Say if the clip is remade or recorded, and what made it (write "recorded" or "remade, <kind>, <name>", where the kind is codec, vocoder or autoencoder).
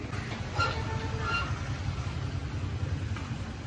recorded